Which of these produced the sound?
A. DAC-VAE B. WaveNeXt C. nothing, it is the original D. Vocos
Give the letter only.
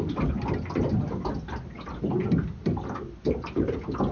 C